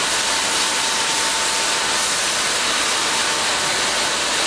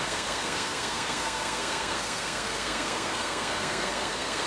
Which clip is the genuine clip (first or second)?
first